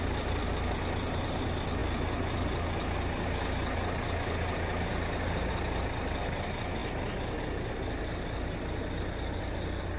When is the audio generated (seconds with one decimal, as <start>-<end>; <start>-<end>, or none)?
none